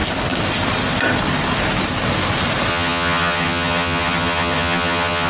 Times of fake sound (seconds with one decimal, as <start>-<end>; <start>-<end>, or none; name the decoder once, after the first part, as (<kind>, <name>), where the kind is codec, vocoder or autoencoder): 2.7-5.3 (vocoder, HiFi-GAN)